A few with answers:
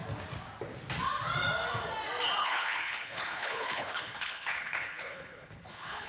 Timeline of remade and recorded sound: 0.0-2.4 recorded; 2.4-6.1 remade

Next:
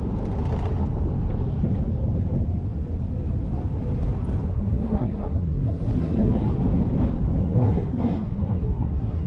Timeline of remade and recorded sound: 0.0-4.5 recorded; 4.5-6.5 remade; 6.5-7.4 recorded; 7.4-9.3 remade

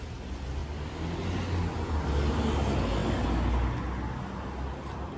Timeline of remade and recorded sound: 0.0-5.2 recorded